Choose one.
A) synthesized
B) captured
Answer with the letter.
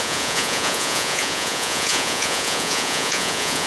A